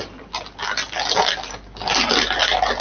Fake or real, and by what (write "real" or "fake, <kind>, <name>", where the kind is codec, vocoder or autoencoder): real